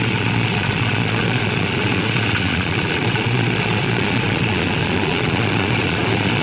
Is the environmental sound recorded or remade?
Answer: remade